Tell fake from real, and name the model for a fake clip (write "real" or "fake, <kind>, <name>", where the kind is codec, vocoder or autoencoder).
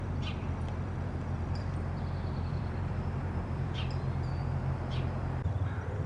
fake, vocoder, BigVGAN v2